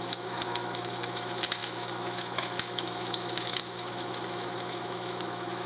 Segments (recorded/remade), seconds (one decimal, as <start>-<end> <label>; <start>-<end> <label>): 0.0-5.7 remade